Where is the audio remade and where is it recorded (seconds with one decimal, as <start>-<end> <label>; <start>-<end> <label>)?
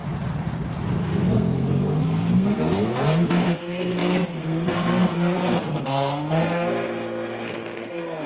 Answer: 0.0-1.0 recorded; 1.0-8.3 remade